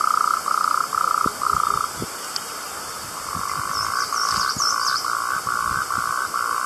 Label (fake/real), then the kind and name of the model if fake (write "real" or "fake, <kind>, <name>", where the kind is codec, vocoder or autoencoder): real